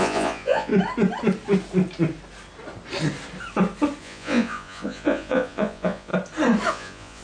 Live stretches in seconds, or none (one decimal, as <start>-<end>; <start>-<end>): 0.7-4.0; 6.1-6.7